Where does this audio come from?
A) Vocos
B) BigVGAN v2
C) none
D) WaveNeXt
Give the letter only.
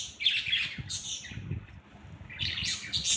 C